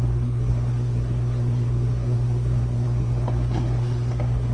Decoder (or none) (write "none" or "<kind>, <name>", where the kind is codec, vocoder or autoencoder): codec, SNAC